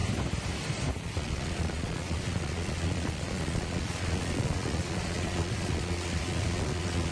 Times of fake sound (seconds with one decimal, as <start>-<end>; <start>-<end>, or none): 1.0-7.1